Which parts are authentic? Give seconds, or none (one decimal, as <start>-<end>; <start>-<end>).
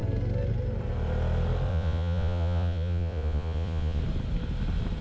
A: 0.0-1.7; 4.0-5.0